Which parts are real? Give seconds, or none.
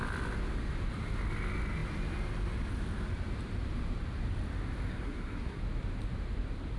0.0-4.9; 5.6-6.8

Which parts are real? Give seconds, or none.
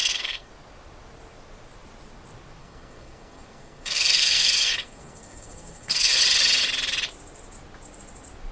0.5-2.6; 6.2-8.5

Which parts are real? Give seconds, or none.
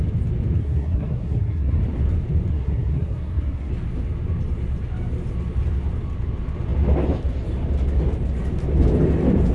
0.0-0.6; 1.8-2.5; 3.7-9.5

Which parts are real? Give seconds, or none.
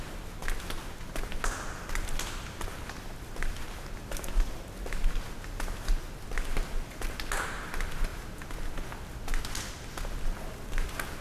0.0-11.2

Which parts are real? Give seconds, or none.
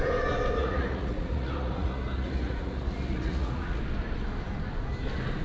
0.0-0.6; 3.8-5.4